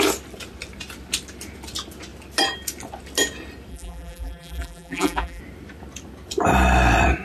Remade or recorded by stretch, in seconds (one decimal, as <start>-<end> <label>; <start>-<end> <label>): 0.0-3.7 recorded; 3.7-5.4 remade; 5.4-7.2 recorded